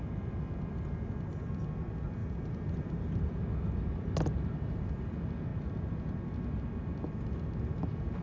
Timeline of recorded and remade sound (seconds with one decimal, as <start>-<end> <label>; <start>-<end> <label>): 0.0-2.2 recorded; 2.2-3.4 remade; 3.4-8.2 recorded